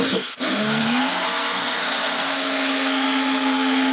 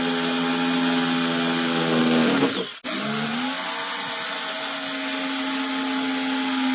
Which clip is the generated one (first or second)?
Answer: first